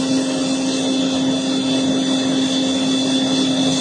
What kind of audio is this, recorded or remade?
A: recorded